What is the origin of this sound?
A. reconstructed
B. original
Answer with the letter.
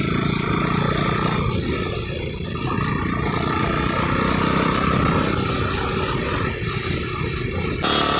B